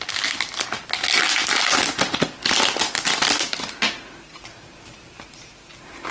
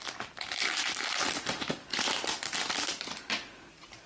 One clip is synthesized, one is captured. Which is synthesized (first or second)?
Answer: second